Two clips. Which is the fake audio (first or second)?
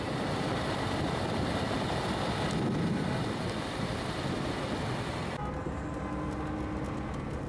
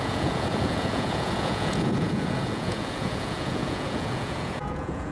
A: second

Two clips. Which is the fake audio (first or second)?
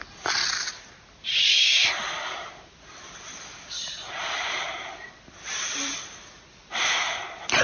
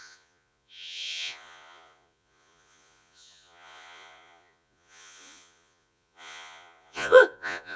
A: second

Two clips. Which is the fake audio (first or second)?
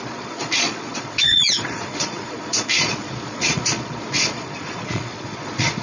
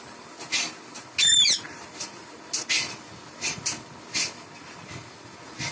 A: first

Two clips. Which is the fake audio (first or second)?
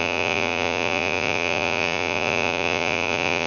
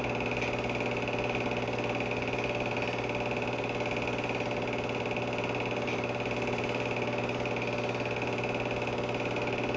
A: first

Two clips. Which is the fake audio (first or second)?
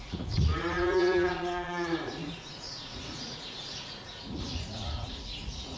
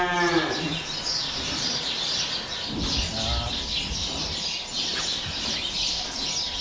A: first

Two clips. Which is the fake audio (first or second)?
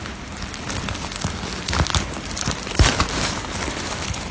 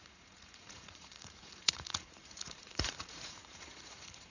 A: second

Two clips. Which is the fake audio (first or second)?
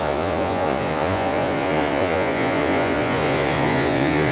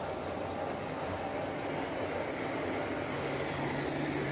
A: first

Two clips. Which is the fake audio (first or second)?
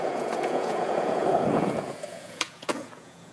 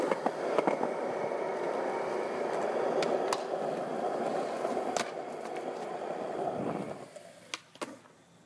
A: first